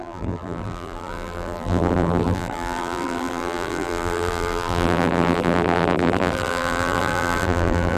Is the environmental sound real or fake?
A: fake